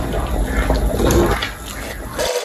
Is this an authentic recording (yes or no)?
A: yes